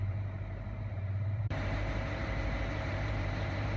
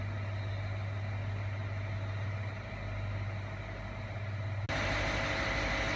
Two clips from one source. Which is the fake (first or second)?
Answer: first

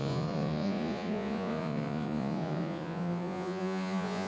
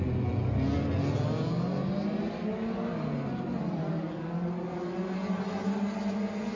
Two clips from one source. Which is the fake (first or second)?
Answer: first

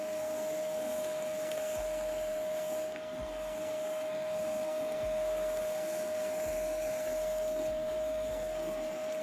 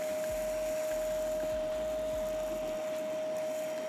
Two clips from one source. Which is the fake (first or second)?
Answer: first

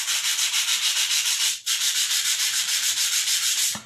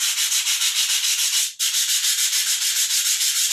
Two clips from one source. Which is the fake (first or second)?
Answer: first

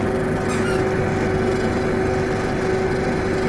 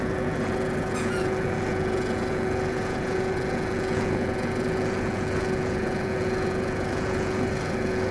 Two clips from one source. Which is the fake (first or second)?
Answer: second